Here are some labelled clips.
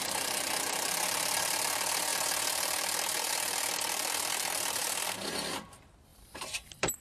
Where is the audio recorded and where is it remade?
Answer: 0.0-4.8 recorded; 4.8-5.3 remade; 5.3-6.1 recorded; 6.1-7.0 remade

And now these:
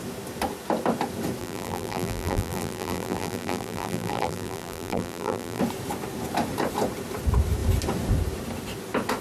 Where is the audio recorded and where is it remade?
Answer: 0.0-1.4 recorded; 1.4-5.6 remade; 5.6-9.2 recorded

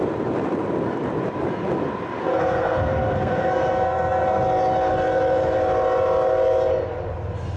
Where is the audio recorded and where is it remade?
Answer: 0.0-2.2 recorded; 2.2-4.4 remade; 4.4-7.6 recorded

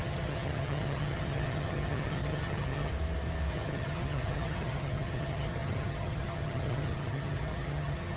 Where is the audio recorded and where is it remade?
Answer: 0.0-2.9 remade; 2.9-3.5 recorded; 3.5-8.2 remade

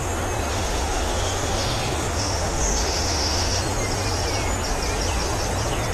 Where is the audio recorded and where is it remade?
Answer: 0.0-0.5 recorded; 0.5-3.6 remade; 3.6-5.9 recorded

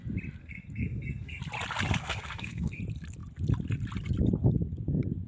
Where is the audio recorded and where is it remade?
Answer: 0.0-0.4 recorded; 0.4-1.4 remade; 1.4-2.0 recorded; 2.0-2.8 remade; 2.8-5.3 recorded